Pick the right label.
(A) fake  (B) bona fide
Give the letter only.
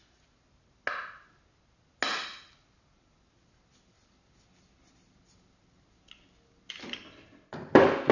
B